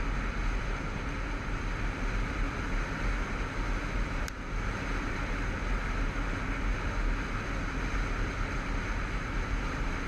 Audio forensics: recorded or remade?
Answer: recorded